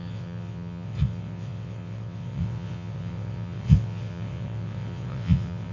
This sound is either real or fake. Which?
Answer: fake